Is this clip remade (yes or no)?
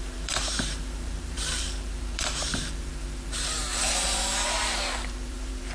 yes